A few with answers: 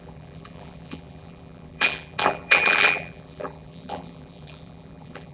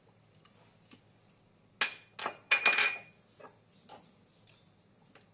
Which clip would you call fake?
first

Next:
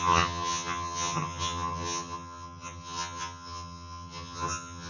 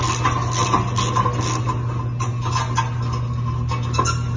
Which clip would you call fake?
first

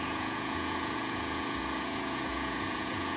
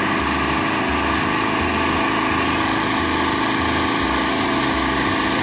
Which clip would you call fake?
first